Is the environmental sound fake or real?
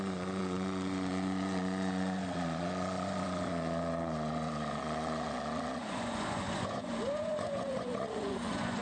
fake